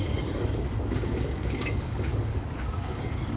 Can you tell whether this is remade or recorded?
remade